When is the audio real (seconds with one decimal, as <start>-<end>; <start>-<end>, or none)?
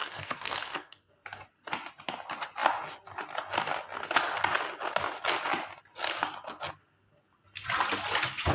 1.1-8.5